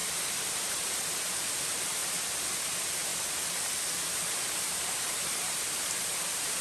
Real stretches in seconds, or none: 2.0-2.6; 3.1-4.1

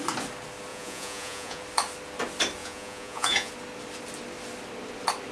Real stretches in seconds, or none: 0.0-0.7; 1.6-2.6; 3.5-5.3

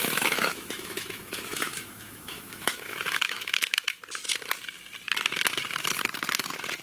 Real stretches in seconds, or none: 4.0-6.8

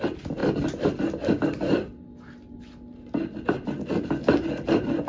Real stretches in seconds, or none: 0.0-5.1

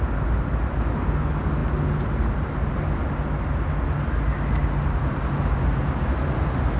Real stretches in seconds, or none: 0.0-6.8

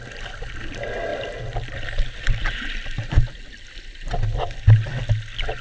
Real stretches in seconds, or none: 0.0-5.6

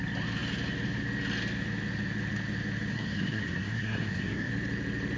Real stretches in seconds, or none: 0.0-2.9; 4.5-5.2